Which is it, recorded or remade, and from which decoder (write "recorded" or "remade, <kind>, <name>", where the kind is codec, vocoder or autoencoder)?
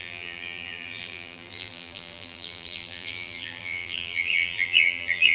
remade, vocoder, BigVGAN v2